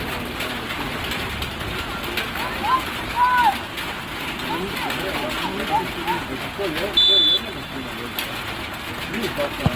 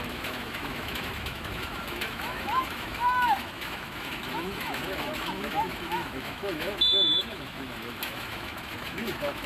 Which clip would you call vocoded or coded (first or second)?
second